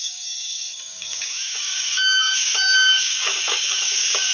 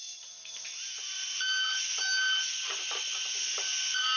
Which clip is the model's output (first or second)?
first